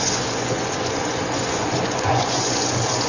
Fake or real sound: fake